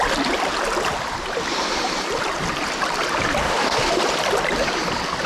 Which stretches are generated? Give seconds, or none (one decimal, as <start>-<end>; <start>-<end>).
3.4-3.9